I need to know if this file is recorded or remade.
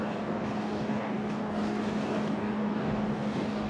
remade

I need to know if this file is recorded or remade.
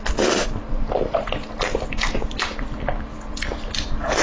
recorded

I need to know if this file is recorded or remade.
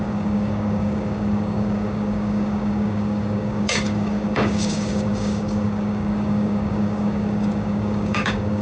remade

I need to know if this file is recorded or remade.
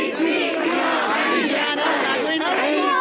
recorded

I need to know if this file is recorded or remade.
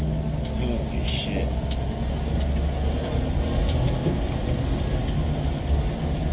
recorded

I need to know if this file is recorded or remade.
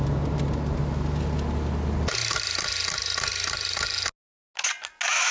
recorded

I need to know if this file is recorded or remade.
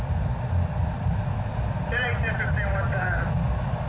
recorded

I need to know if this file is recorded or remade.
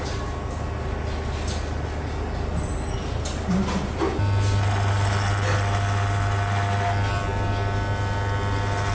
recorded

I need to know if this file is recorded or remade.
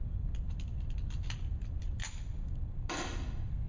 recorded